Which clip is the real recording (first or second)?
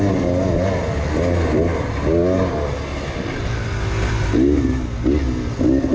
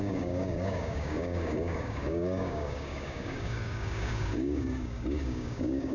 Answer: first